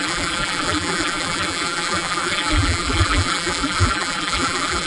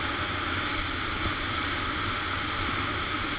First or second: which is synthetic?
first